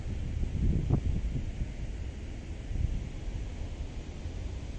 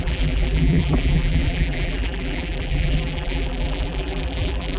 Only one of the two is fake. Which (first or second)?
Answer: second